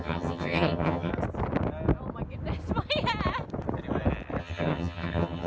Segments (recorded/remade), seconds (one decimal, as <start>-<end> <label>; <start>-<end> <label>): 0.0-1.1 remade; 1.1-4.4 recorded; 4.4-5.5 remade